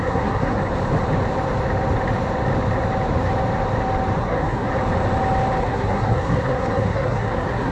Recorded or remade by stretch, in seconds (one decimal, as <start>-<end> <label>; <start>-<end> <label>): 0.0-0.6 remade; 0.6-4.2 recorded; 4.2-4.7 remade; 4.7-5.6 recorded; 5.6-7.7 remade